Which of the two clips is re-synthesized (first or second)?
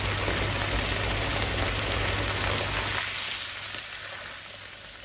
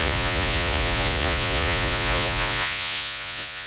second